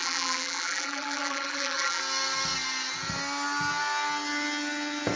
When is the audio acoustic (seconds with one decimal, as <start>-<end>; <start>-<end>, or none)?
2.0-5.2